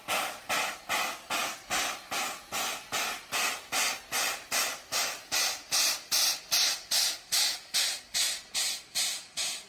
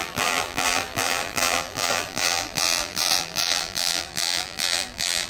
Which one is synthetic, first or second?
second